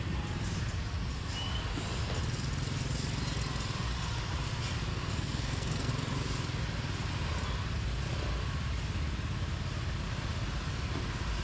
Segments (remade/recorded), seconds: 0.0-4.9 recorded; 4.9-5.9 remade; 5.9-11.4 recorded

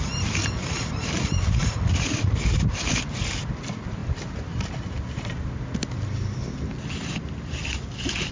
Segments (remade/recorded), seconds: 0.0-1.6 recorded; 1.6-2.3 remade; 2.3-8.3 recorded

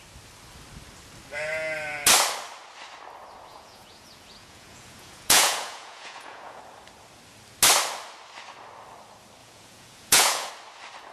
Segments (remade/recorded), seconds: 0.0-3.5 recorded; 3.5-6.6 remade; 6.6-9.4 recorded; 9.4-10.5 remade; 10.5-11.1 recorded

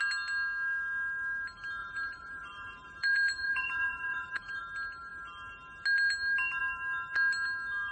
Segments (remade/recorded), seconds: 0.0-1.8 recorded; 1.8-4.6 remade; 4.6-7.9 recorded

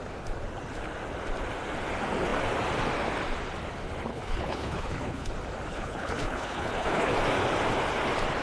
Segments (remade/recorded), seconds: 0.0-4.1 recorded; 4.1-5.3 remade; 5.3-5.7 recorded; 5.7-7.1 remade; 7.1-8.4 recorded

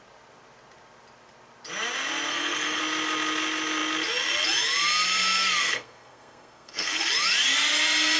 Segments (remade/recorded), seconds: 0.0-2.3 recorded; 2.3-2.8 remade; 2.8-5.6 recorded; 5.6-7.1 remade; 7.1-8.2 recorded